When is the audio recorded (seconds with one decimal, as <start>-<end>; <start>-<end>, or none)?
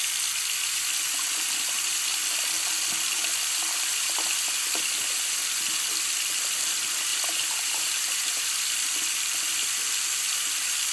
0.0-7.1; 8.6-10.9